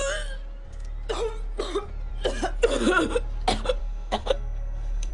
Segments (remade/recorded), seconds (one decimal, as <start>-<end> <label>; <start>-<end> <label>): 0.0-3.8 recorded; 3.8-5.1 remade